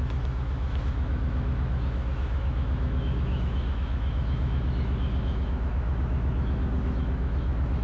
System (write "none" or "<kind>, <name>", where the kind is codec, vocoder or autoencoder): autoencoder, DAC-VAE